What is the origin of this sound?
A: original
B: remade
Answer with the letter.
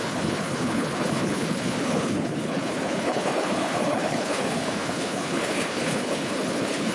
B